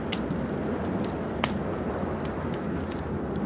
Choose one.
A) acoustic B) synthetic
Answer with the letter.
A